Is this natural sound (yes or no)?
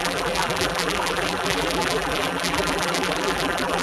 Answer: no